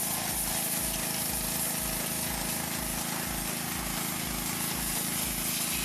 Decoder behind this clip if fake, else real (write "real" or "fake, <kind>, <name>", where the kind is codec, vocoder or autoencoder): real